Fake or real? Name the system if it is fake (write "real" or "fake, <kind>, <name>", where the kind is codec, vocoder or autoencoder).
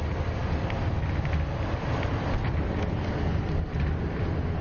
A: real